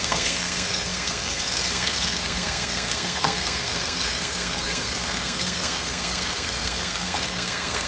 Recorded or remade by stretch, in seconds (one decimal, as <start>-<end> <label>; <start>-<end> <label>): 0.0-7.9 remade